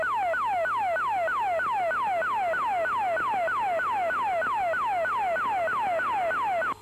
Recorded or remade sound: recorded